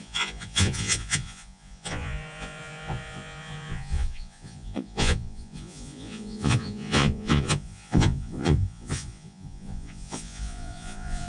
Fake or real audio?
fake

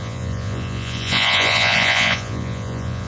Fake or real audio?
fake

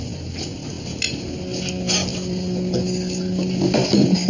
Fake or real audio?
real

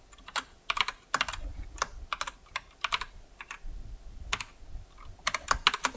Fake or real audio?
real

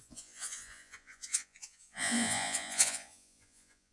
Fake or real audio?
fake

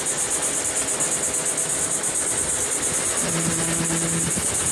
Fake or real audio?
real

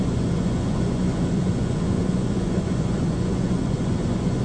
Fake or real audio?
fake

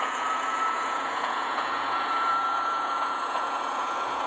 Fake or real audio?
fake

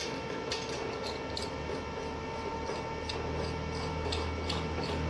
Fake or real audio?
real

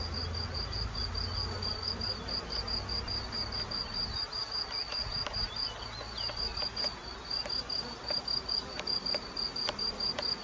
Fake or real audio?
real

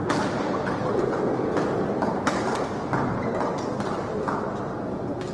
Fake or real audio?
real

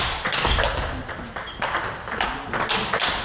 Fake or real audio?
real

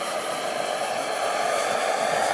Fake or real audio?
real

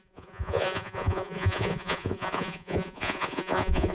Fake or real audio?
fake